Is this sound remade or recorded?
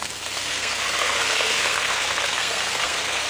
remade